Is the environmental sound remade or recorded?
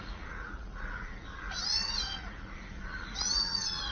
remade